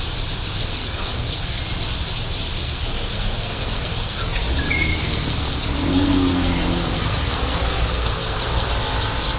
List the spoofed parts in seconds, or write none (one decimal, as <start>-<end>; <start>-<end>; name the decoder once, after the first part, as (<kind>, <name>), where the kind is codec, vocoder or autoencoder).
0.5-1.6 (codec, SNAC); 2.6-4.5; 4.9-8.7